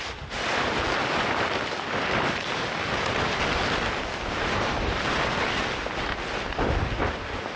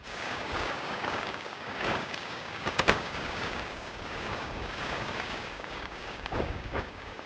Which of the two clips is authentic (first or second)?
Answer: first